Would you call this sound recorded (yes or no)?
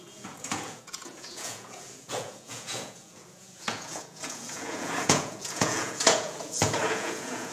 no